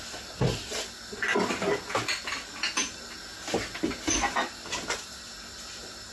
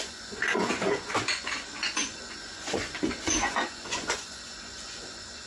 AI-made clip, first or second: second